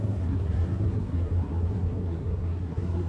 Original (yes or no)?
no